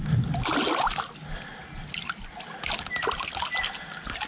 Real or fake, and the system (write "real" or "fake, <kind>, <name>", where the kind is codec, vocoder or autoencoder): real